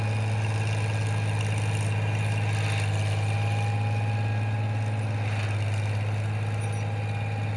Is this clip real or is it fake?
real